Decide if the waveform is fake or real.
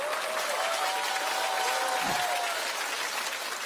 real